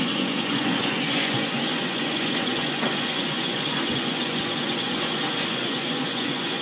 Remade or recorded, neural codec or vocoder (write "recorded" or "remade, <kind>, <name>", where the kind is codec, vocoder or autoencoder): remade, vocoder, Vocos